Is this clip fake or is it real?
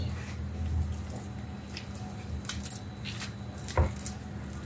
real